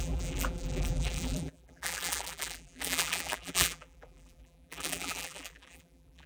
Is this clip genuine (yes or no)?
no